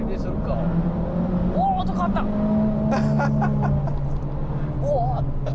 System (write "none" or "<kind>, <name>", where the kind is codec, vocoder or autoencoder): none